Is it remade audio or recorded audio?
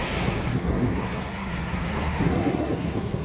remade